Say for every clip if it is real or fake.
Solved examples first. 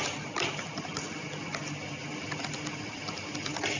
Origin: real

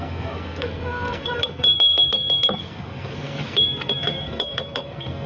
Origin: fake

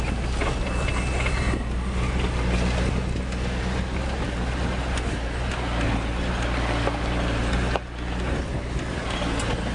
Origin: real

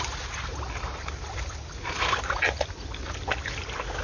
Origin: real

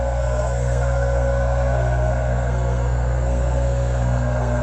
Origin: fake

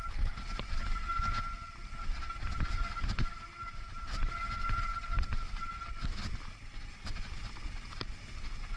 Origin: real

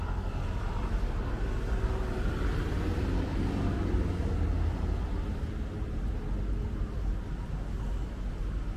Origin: real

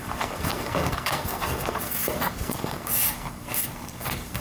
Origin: fake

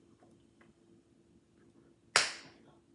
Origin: real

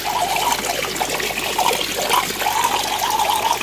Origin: real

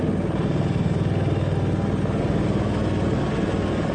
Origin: real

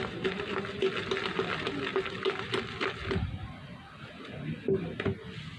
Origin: real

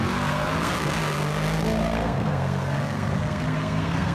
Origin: fake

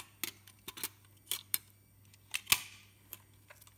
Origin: real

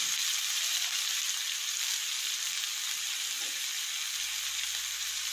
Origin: real